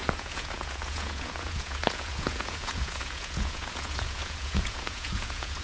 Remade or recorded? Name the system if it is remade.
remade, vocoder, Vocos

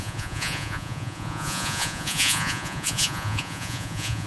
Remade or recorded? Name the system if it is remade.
remade, vocoder, Vocos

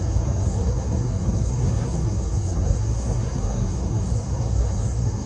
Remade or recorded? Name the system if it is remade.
remade, codec, SNAC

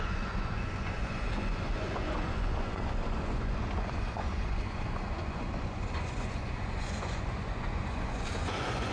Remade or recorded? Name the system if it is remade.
remade, vocoder, Vocos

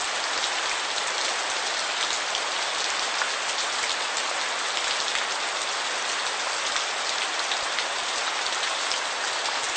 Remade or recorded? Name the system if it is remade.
recorded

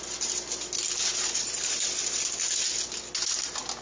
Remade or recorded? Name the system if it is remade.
recorded